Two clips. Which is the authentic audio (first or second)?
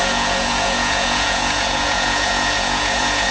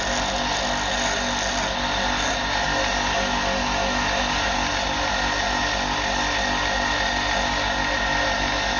second